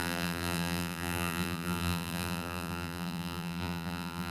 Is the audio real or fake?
fake